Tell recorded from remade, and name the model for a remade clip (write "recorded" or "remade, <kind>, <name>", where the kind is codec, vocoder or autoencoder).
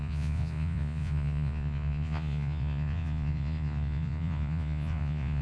remade, vocoder, Vocos